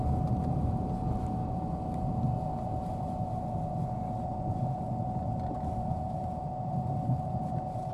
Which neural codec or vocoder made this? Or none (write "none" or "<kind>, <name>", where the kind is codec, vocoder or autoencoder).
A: none